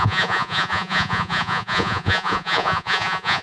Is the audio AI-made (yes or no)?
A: yes